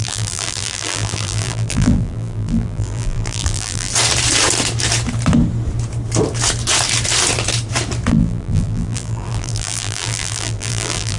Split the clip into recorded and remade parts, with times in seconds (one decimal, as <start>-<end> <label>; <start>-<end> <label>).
0.0-3.9 remade; 3.9-8.1 recorded; 8.1-11.2 remade